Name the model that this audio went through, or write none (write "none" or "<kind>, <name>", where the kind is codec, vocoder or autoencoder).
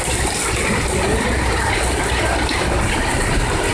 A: none